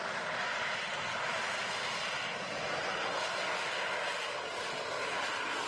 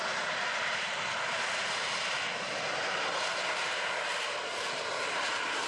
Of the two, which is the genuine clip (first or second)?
first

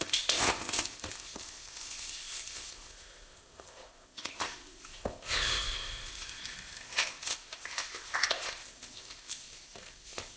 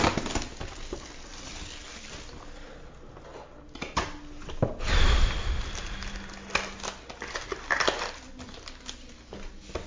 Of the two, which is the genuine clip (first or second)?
second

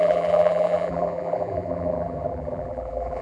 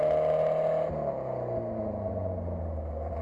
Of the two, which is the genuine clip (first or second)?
second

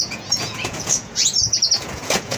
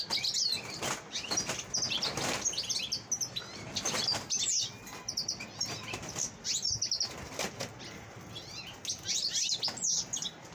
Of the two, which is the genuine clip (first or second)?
second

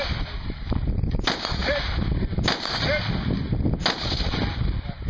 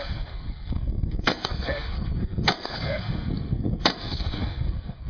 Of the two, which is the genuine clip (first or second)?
first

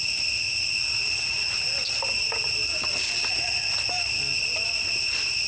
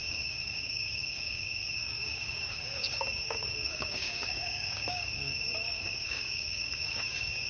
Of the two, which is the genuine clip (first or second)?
first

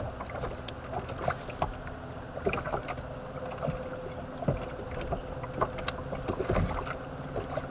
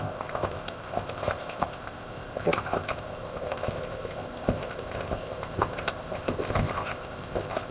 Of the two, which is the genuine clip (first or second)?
first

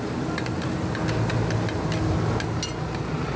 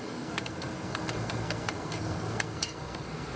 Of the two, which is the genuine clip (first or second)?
first